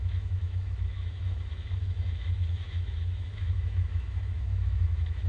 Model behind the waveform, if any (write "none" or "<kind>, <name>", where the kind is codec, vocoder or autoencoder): autoencoder, DAC-VAE